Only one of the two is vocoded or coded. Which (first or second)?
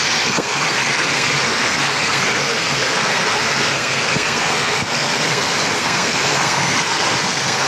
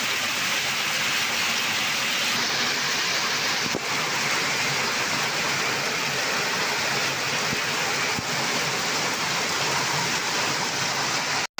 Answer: first